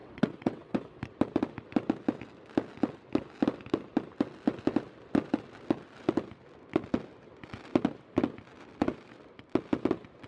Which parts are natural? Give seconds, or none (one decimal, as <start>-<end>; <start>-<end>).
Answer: 1.0-10.3